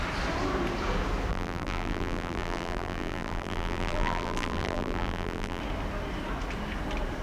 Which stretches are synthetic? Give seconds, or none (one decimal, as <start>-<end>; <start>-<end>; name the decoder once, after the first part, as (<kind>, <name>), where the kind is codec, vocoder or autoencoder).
1.3-5.6 (vocoder, BigVGAN v2)